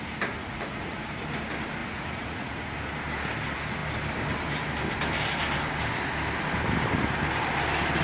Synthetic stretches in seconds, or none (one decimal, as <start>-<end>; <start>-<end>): 0.4-1.0; 1.8-2.7